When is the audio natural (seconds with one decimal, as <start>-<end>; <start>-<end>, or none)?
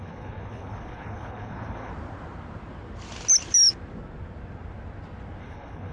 1.9-5.4